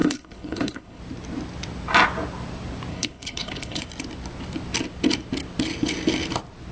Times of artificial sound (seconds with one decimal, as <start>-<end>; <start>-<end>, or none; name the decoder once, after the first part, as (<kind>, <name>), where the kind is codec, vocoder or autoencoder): 0.0-1.0 (codec, HILCodec); 2.9-3.8

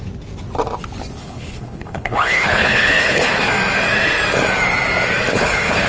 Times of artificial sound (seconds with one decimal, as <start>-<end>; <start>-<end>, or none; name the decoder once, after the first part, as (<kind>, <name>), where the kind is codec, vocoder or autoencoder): 1.2-3.5 (codec, HILCodec); 5.3-5.9

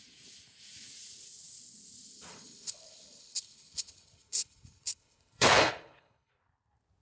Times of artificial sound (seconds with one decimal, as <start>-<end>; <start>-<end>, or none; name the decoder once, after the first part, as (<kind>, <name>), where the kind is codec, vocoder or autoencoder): 2.3-6.3 (codec, HILCodec)

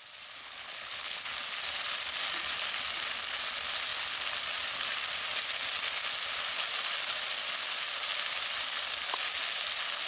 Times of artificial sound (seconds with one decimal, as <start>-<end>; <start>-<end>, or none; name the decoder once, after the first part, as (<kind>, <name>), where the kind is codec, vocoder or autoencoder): 0.4-1.3 (codec, HILCodec)